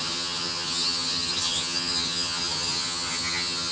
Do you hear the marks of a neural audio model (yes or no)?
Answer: yes